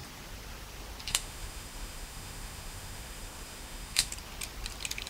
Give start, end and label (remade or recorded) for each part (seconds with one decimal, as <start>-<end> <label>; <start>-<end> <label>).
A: 0.0-1.1 recorded; 1.1-4.1 remade; 4.1-5.1 recorded